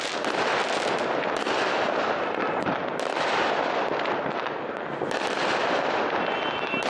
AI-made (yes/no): no